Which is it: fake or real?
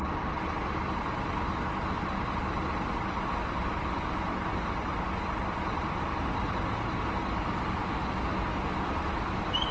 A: real